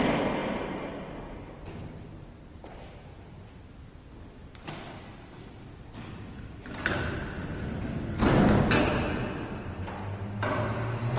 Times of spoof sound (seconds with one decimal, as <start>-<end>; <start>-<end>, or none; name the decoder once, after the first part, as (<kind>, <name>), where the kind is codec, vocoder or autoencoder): none